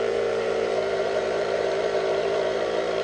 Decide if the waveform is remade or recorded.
remade